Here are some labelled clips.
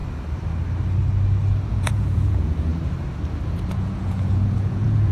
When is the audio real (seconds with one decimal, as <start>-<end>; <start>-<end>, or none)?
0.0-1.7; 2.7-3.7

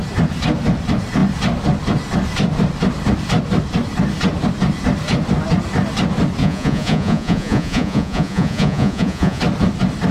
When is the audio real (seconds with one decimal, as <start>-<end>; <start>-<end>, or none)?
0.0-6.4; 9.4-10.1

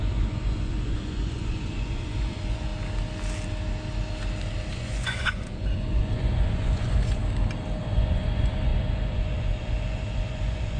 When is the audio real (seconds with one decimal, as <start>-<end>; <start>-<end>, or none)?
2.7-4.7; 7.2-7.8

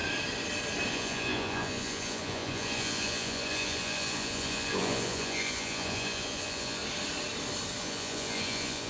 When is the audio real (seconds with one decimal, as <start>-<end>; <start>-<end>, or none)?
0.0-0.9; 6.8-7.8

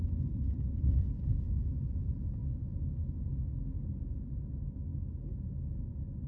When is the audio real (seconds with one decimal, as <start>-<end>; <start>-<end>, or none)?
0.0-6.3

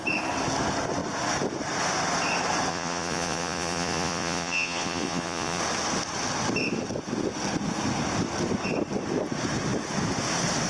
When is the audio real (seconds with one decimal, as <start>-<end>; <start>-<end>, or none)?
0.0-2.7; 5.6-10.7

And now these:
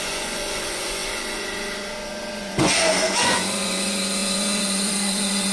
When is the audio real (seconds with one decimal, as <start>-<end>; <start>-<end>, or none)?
none